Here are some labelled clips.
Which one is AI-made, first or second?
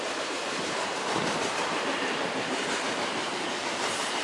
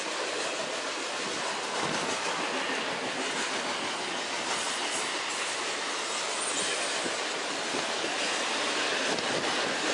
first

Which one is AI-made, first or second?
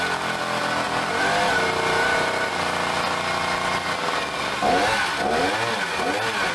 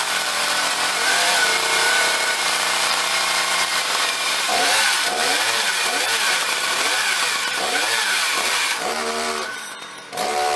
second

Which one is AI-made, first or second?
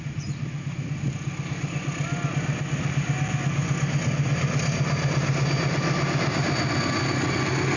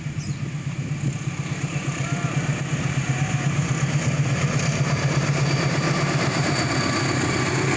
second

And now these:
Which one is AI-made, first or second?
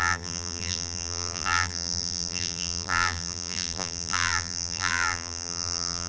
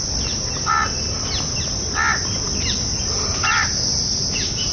first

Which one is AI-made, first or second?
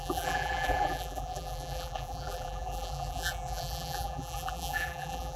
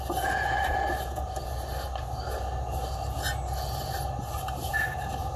first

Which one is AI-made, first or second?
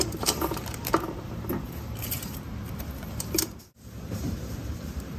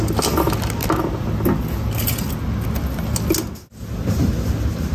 first